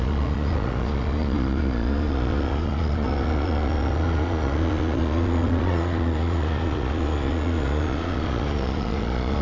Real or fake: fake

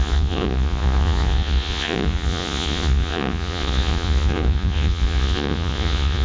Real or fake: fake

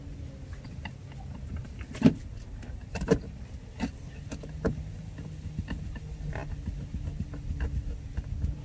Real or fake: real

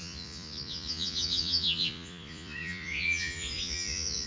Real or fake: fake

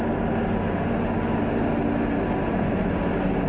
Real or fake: real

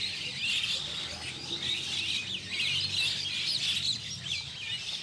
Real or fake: real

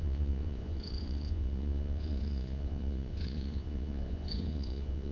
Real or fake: fake